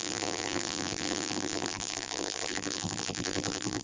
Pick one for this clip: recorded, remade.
remade